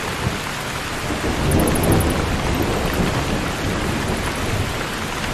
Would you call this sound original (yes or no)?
yes